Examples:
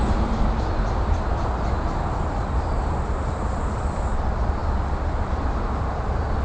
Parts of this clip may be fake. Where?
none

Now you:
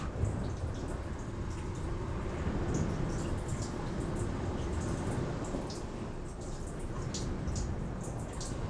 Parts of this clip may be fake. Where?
none

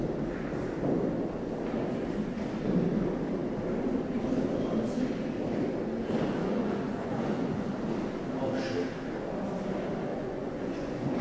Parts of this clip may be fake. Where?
6.4-7.7 (vocoder, Vocos); 10.1-11.2

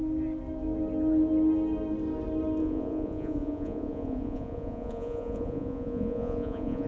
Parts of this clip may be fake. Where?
2.6-6.9 (vocoder, Vocos)